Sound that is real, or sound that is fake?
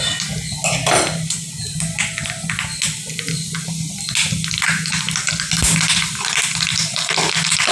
real